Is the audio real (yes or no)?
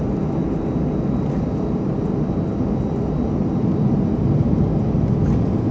yes